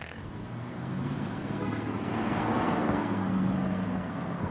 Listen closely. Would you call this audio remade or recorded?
remade